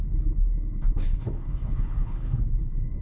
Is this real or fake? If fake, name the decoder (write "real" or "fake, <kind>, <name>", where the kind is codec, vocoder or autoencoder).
fake, codec, HILCodec